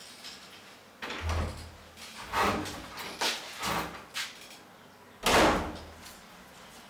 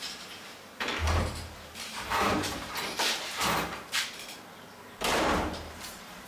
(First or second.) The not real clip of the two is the second